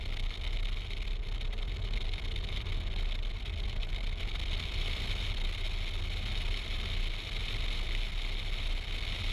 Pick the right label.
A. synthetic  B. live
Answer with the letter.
B